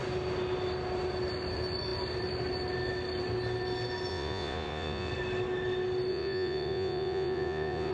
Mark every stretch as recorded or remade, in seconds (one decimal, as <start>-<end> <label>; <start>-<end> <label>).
0.0-4.1 recorded; 4.1-5.1 remade; 5.1-6.1 recorded; 6.1-7.9 remade